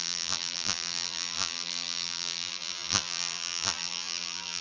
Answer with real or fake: fake